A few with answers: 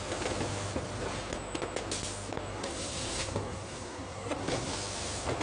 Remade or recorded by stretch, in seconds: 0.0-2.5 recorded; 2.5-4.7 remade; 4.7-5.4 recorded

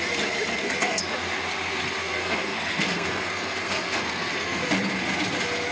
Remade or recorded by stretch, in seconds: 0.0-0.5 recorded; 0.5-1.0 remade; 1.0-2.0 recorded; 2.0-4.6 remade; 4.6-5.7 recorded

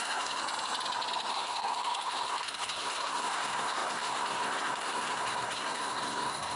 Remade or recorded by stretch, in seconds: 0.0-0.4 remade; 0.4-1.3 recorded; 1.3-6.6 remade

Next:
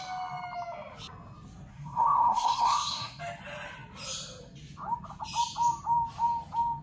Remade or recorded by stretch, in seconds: 0.0-1.7 recorded; 1.7-3.2 remade; 3.2-6.8 recorded

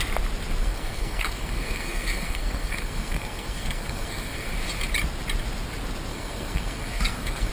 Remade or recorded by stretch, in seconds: 0.0-0.6 recorded; 0.6-4.5 remade; 4.5-6.1 recorded; 6.1-7.5 remade

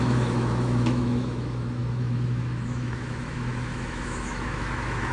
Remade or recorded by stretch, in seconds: 0.0-5.1 remade

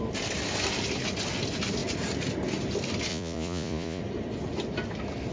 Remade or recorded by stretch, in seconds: 0.0-3.1 recorded; 3.1-4.0 remade; 4.0-5.3 recorded

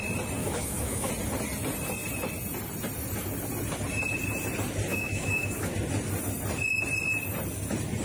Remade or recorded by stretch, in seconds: 0.0-0.4 recorded; 0.4-1.1 remade; 1.1-4.9 recorded; 4.9-5.7 remade; 5.7-8.0 recorded